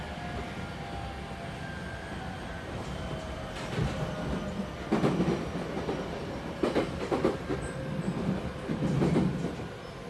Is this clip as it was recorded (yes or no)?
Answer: yes